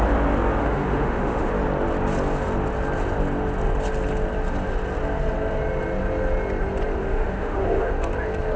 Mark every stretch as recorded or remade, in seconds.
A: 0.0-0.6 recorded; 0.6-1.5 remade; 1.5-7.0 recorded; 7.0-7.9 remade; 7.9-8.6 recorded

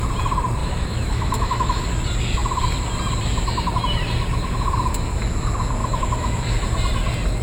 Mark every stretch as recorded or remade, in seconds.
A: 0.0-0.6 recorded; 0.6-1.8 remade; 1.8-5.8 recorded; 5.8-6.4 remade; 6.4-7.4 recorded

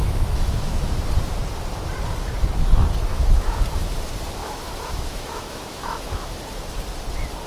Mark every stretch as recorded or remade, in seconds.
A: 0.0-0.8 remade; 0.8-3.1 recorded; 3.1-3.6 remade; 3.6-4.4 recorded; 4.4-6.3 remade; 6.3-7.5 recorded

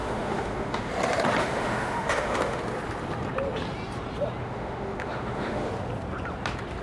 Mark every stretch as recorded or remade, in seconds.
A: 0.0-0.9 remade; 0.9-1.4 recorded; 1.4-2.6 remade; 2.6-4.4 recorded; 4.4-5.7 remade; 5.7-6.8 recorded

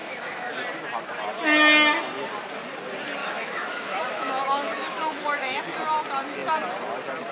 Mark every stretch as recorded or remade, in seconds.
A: 0.0-0.5 remade; 0.5-3.2 recorded; 3.2-5.6 remade; 5.6-7.3 recorded

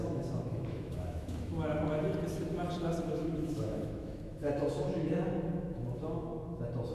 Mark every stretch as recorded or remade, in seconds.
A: 0.0-1.5 remade; 1.5-3.0 recorded; 3.0-6.3 remade; 6.3-6.9 recorded